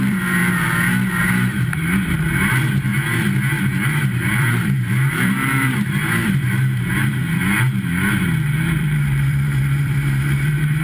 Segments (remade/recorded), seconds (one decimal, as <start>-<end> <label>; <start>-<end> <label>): 0.0-0.4 remade; 0.4-1.2 recorded; 1.2-2.9 remade; 2.9-3.6 recorded; 3.6-7.2 remade; 7.2-8.8 recorded; 8.8-10.8 remade